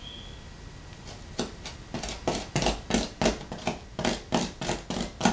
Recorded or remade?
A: recorded